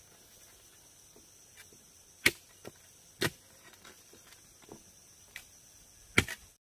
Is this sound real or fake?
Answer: real